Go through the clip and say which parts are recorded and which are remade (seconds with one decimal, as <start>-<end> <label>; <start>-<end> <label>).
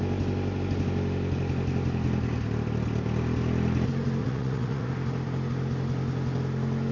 0.0-4.2 recorded; 4.2-4.9 remade; 4.9-6.9 recorded